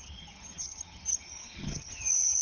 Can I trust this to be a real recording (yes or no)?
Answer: no